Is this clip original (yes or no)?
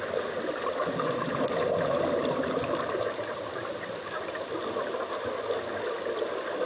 yes